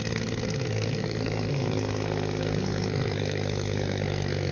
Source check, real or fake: fake